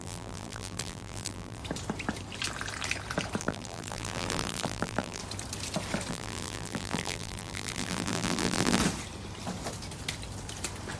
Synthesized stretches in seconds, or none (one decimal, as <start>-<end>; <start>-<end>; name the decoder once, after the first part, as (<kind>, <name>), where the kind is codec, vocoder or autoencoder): 0.0-1.6 (vocoder, BigVGAN v2); 3.4-5.2; 6.1-8.8